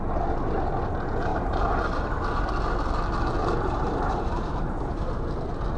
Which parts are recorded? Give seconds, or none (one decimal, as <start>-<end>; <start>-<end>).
0.0-1.3; 2.5-3.4; 5.1-5.8